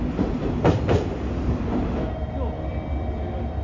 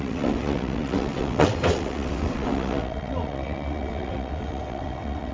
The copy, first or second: second